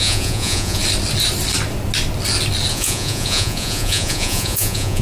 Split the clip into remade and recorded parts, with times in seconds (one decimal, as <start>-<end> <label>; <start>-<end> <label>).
0.0-0.8 remade; 0.8-2.7 recorded; 2.7-5.0 remade